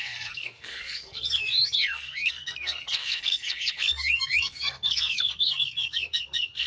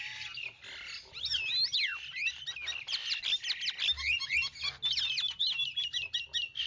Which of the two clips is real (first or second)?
second